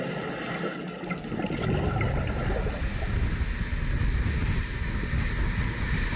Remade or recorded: recorded